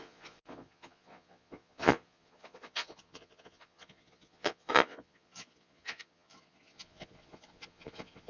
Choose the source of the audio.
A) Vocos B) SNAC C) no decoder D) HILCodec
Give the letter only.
A